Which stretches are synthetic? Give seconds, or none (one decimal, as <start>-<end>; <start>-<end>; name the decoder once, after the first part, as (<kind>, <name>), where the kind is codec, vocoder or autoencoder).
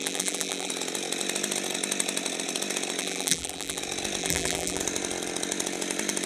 0.0-0.7 (vocoder, BigVGAN v2); 3.0-3.8; 4.2-4.8